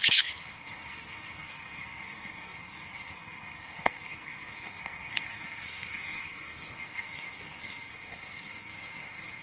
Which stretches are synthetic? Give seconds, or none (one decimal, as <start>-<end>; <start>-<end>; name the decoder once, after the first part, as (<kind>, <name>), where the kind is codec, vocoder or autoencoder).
0.0-9.4 (codec, SNAC)